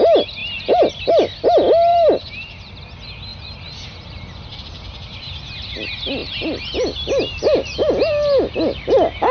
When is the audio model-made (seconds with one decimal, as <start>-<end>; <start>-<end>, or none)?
1.9-2.7; 3.3-5.0; 6.2-9.3